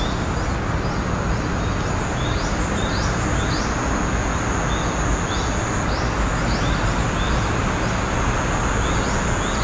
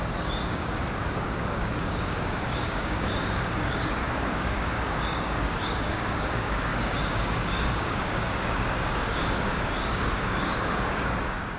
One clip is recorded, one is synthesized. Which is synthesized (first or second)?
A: second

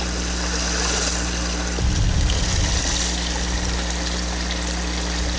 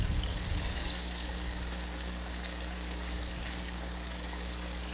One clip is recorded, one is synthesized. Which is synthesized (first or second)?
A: second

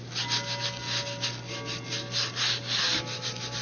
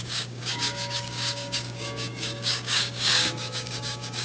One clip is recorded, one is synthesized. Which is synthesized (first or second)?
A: second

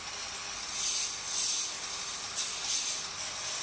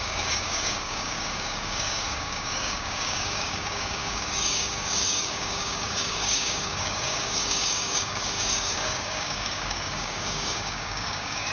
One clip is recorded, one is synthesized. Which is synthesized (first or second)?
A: second